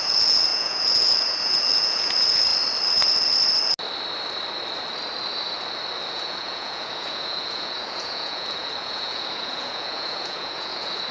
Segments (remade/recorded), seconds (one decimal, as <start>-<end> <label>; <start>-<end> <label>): 0.0-2.5 remade; 2.5-6.1 recorded; 6.1-11.1 remade